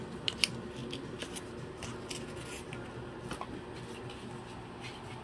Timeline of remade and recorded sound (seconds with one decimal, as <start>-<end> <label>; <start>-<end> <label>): 0.0-5.2 recorded